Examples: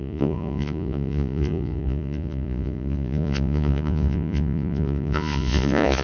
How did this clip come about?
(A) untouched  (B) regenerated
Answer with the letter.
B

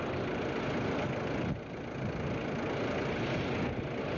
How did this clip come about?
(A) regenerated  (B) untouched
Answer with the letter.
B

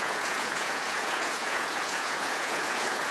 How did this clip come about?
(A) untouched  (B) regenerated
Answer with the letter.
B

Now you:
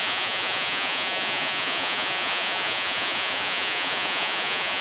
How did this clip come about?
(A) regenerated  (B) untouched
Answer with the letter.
A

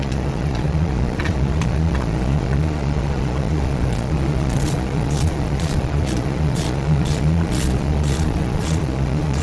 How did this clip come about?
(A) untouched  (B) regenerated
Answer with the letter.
B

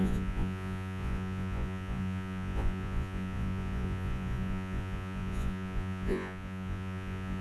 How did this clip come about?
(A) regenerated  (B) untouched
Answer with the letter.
A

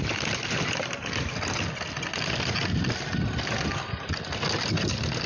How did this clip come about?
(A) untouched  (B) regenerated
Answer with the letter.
A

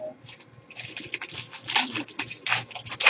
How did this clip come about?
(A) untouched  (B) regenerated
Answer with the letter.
A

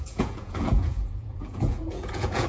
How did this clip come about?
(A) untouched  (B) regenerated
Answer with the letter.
B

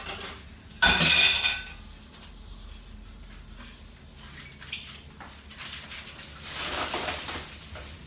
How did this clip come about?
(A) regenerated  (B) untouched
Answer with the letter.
B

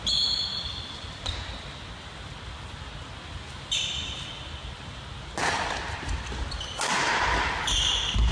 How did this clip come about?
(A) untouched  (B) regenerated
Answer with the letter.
A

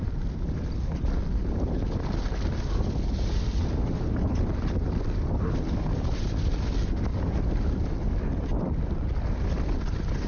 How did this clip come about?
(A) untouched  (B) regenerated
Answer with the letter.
A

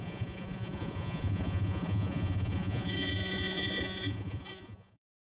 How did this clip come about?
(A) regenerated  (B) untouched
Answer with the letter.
A